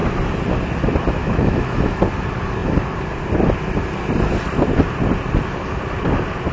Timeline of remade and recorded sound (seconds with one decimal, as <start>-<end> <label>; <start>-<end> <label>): 0.0-1.2 recorded; 1.2-2.0 remade; 2.0-6.5 recorded